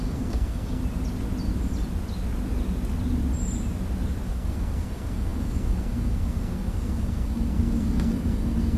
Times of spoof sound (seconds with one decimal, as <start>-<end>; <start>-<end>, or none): 0.0-0.8; 4.3-8.8